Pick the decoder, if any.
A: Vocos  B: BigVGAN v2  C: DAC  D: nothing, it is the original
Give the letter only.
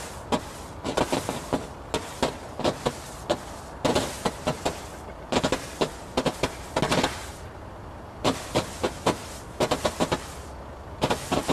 D